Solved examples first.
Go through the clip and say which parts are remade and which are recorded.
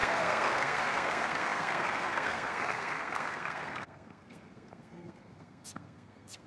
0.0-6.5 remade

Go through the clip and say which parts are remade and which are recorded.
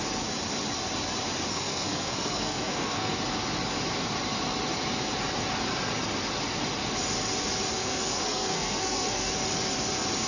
0.0-1.5 recorded; 1.5-3.2 remade; 3.2-7.8 recorded; 7.8-9.3 remade; 9.3-10.3 recorded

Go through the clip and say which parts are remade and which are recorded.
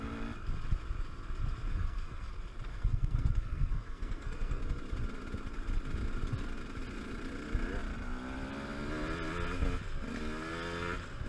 0.0-1.7 recorded; 1.7-2.3 remade; 2.3-2.7 recorded; 2.7-4.6 remade; 4.6-11.3 recorded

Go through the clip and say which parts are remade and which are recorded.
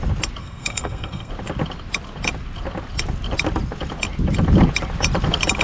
0.0-0.4 recorded; 0.4-1.3 remade; 1.3-5.6 recorded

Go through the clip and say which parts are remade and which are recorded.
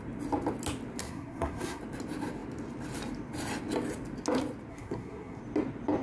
0.0-1.0 recorded; 1.0-1.8 remade; 1.8-4.7 recorded; 4.7-5.4 remade; 5.4-6.0 recorded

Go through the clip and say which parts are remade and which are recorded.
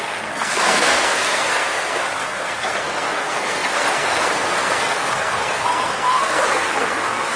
0.0-7.4 remade